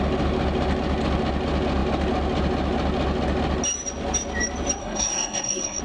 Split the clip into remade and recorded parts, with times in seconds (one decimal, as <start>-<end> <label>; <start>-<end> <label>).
0.0-4.8 recorded; 4.8-5.8 remade